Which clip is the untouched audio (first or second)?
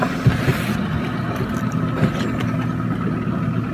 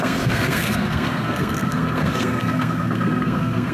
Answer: first